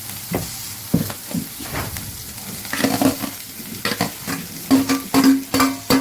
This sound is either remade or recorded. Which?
recorded